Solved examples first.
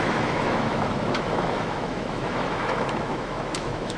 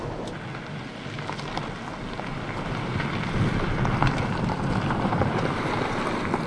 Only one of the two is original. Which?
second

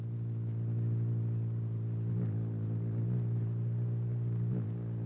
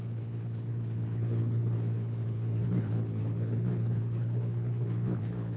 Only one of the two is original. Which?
first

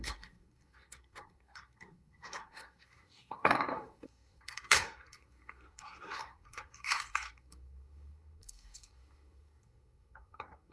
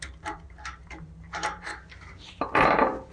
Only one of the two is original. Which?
second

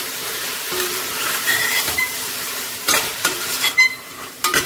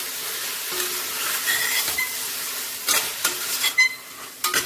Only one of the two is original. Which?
second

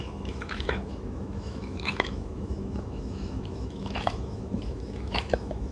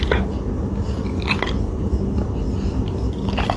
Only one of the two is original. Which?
second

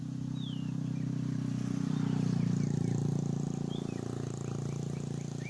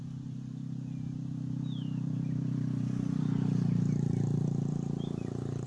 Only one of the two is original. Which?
first